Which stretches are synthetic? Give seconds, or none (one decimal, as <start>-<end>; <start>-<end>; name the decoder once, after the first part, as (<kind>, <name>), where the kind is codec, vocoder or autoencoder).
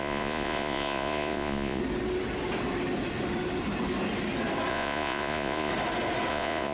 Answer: 0.0-1.8 (vocoder, Vocos); 4.7-5.7; 6.3-6.7